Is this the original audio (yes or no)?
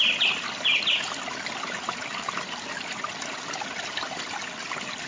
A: yes